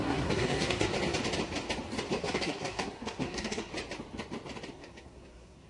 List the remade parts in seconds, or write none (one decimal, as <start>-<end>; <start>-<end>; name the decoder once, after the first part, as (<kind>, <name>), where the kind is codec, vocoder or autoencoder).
0.0-0.9 (codec, SNAC); 2.2-3.7; 4.7-5.7